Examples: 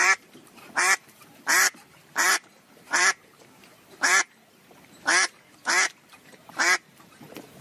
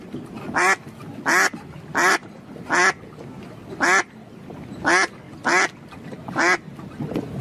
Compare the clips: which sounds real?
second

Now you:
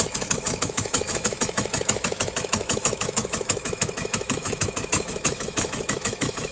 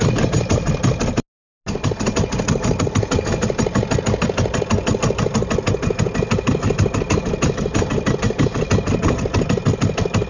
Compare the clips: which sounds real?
second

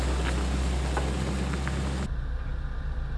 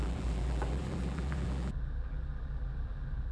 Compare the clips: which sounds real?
first